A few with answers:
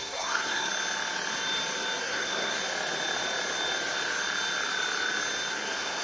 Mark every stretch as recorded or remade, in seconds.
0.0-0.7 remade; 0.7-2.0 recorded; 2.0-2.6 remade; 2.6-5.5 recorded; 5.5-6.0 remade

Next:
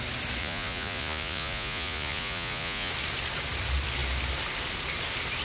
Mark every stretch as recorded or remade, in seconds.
0.0-0.4 recorded; 0.4-2.9 remade; 2.9-5.4 recorded

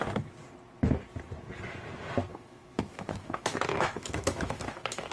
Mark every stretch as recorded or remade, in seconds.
0.0-2.3 recorded; 2.3-5.1 remade

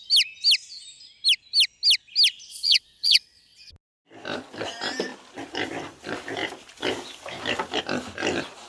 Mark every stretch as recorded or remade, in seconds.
0.0-2.5 recorded; 2.5-3.7 remade; 3.7-8.7 recorded

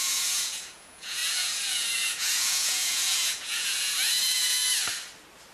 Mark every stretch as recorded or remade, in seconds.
0.0-4.6 remade; 4.6-5.5 recorded

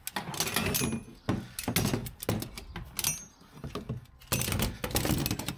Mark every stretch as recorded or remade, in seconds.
0.0-5.6 recorded

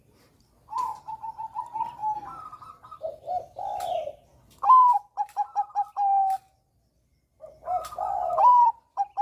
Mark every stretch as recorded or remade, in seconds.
0.0-2.0 remade; 2.0-3.0 recorded; 3.0-4.3 remade; 4.3-7.9 recorded; 7.9-9.2 remade